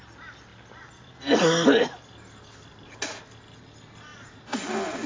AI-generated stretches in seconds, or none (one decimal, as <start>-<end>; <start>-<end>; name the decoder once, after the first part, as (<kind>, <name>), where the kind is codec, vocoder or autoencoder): none